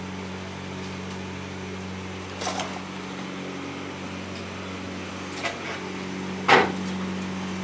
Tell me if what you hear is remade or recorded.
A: recorded